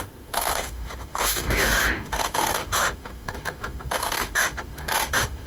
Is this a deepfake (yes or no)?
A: yes